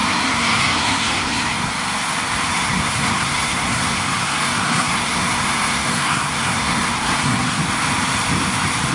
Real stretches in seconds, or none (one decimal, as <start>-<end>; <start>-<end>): 1.7-2.5; 7.6-8.9